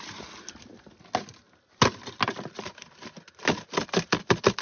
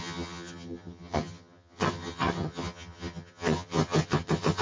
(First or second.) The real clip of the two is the first